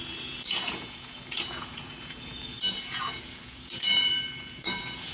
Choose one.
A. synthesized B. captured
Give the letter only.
A